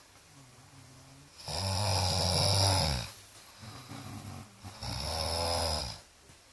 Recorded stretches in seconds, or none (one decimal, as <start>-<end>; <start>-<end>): 0.0-6.5